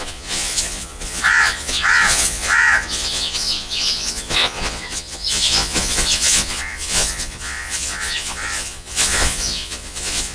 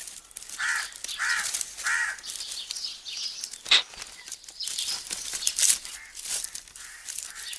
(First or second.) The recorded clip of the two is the second